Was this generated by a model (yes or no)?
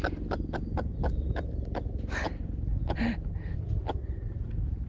no